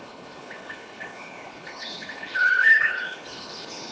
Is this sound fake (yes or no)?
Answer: yes